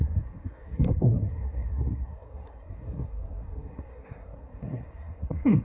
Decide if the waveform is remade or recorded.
remade